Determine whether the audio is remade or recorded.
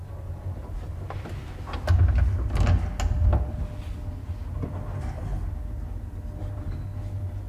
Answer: recorded